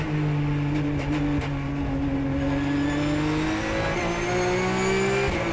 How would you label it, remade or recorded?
recorded